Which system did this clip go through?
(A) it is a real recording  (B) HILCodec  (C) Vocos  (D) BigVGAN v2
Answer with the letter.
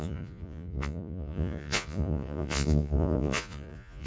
C